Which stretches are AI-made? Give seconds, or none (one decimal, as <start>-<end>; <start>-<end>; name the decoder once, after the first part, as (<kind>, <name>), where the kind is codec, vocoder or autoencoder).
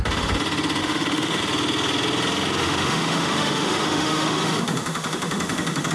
0.8-1.4 (autoencoder, DAC-VAE); 2.6-5.9